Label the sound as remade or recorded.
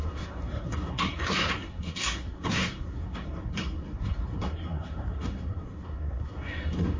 remade